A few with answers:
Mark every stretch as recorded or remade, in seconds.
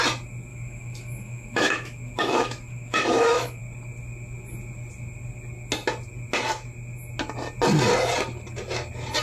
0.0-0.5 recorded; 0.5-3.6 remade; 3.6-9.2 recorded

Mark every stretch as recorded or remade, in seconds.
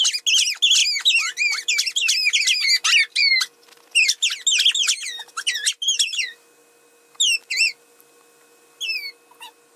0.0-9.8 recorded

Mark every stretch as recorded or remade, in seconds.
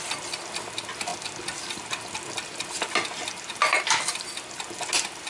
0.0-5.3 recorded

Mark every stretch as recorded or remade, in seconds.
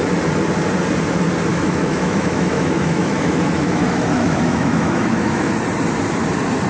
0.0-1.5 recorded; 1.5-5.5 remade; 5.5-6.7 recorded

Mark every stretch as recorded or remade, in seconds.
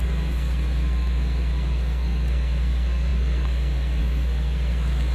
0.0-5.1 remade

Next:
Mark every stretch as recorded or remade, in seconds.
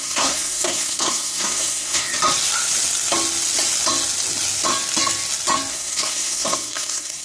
0.0-2.1 remade; 2.1-5.7 recorded; 5.7-7.2 remade